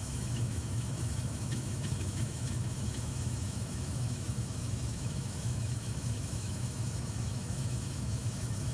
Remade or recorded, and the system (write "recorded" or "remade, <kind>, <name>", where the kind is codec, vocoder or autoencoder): remade, autoencoder, DAC-VAE